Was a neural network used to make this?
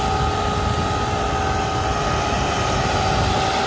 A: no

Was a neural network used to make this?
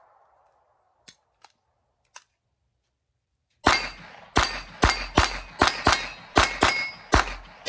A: no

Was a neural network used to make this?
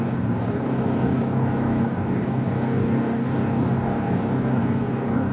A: yes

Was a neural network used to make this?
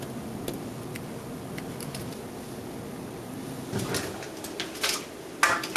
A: no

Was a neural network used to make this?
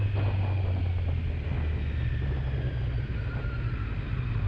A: no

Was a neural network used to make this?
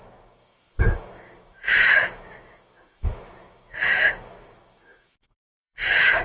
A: yes